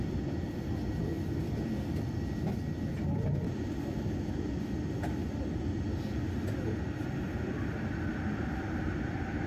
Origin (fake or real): real